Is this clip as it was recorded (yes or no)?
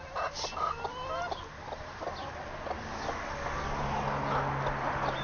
yes